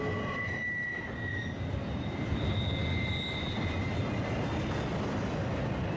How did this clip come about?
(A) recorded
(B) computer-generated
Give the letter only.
A